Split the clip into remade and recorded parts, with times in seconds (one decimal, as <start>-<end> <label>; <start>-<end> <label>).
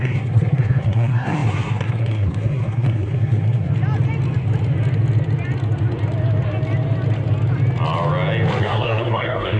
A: 0.0-3.7 remade; 3.7-8.6 recorded; 8.6-9.6 remade